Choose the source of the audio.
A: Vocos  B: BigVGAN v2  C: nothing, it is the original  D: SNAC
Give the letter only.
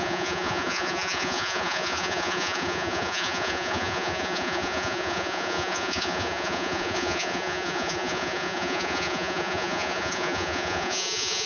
A